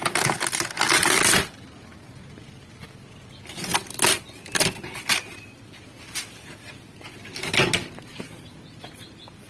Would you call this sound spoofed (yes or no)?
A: no